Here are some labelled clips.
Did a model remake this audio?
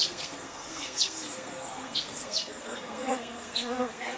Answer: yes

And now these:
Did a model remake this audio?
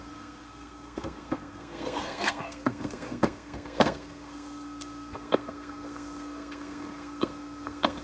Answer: yes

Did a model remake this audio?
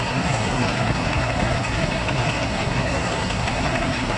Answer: yes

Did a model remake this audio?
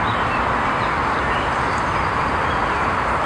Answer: no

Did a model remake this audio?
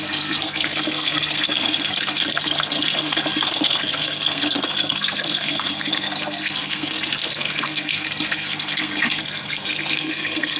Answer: yes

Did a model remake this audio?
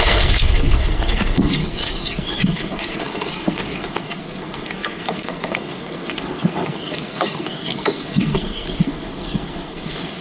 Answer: yes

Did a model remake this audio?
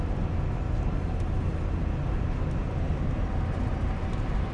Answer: no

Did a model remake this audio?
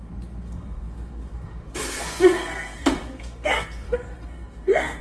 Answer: yes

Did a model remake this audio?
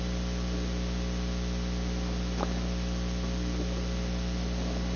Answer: no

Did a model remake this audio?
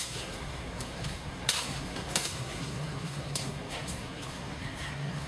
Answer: yes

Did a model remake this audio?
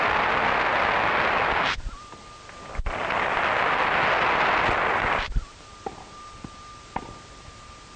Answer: no